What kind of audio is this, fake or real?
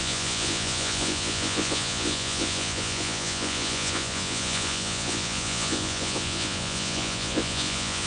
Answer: fake